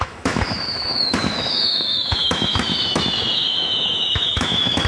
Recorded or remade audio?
remade